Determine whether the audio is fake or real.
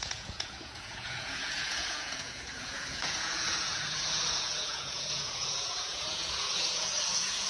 fake